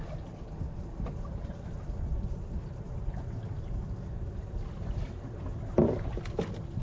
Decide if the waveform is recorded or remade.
recorded